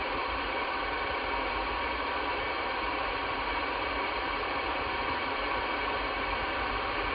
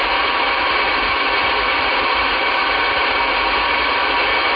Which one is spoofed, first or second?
first